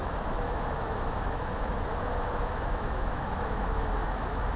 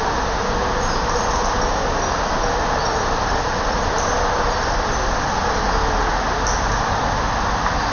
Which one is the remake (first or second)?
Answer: first